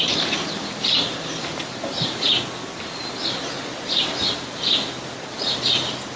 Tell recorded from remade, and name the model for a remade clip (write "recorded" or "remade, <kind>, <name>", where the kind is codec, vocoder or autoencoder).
recorded